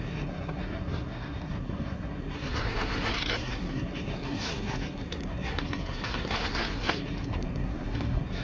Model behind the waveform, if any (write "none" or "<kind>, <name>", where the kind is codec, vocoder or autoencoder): codec, SNAC